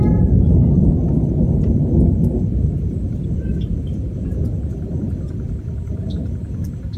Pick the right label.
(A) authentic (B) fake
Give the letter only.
A